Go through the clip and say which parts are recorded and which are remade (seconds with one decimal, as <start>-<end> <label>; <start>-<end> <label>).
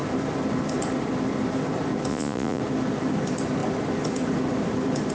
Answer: 0.0-2.1 recorded; 2.1-2.6 remade; 2.6-5.1 recorded